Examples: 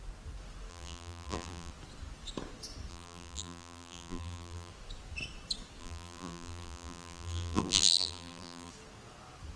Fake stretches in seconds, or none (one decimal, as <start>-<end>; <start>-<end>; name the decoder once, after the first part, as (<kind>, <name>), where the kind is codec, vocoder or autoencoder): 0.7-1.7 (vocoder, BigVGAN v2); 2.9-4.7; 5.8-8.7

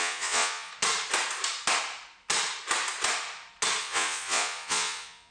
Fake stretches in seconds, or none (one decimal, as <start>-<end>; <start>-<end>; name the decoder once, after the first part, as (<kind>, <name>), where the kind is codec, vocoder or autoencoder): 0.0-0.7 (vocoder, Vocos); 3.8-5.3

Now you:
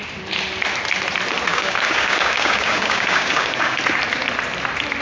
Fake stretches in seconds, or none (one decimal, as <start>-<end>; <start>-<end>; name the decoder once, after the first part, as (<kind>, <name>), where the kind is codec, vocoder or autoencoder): 1.5-3.8 (codec, DAC)

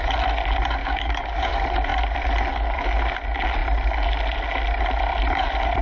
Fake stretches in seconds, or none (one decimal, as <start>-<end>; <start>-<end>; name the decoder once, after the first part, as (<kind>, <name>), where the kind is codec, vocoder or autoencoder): 0.8-1.5 (codec, DAC)

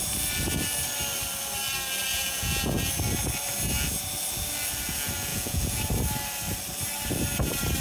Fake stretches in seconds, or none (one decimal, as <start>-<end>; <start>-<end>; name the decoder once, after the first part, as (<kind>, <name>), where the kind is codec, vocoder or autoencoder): 2.1-2.9 (vocoder, Vocos); 5.3-5.8